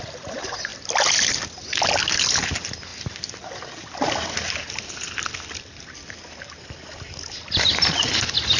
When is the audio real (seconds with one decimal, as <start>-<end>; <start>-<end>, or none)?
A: 0.0-8.6